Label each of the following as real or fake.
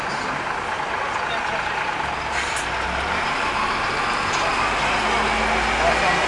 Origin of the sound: real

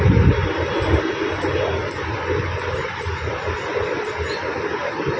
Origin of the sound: real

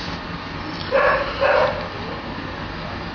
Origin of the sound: real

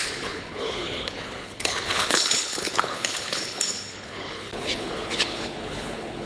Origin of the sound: fake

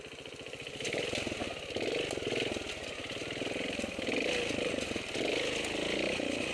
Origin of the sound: real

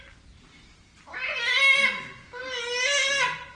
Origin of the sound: real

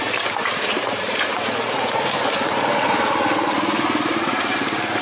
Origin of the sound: real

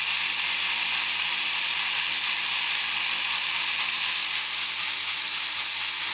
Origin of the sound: real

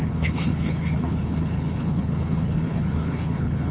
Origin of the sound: fake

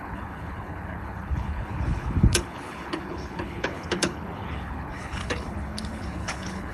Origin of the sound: fake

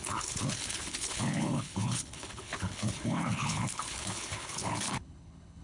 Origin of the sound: fake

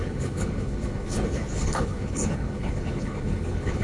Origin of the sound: fake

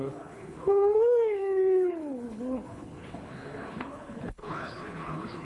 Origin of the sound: fake